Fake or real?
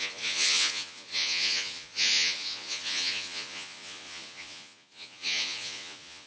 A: fake